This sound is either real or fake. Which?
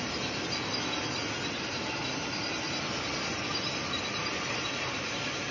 real